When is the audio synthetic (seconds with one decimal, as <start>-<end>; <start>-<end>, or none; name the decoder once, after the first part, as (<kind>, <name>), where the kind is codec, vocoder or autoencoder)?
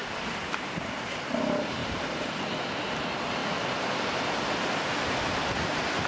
0.0-0.8 (vocoder, BigVGAN v2); 1.8-2.4; 3.4-4.2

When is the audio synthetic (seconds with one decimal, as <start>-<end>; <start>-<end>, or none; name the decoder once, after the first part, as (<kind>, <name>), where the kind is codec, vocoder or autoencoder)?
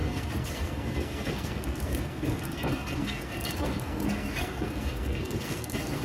0.0-6.0 (codec, SNAC)